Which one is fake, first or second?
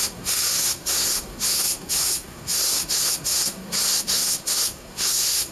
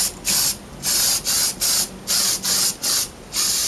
first